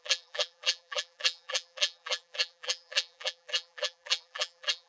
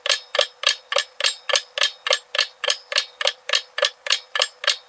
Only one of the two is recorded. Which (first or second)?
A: second